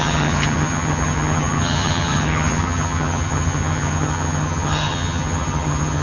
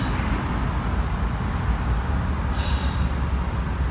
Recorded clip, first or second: second